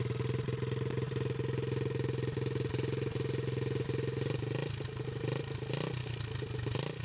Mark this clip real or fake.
real